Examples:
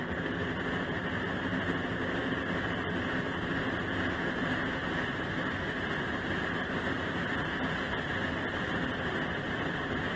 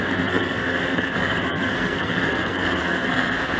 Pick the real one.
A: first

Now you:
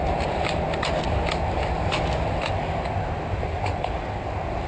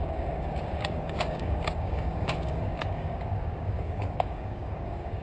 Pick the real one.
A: first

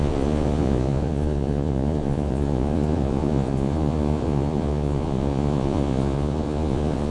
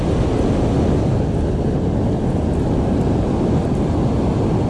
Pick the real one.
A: second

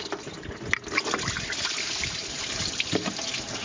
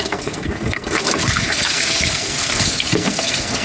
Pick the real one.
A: first